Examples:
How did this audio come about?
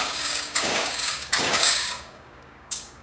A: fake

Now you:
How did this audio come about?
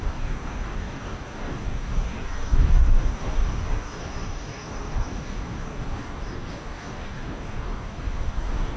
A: fake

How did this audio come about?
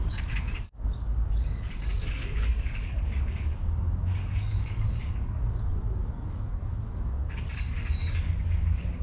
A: fake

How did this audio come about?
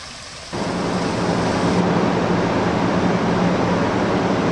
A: real